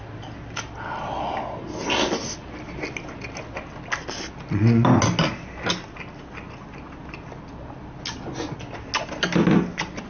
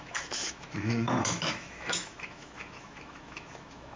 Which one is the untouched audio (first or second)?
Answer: first